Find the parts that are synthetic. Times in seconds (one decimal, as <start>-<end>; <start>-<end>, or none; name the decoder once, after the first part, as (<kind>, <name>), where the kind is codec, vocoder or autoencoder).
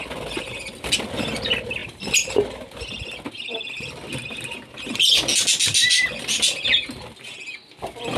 1.8-2.8 (vocoder, BigVGAN v2)